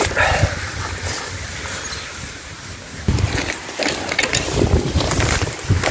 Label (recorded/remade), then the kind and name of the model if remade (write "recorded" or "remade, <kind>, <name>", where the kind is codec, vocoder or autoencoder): recorded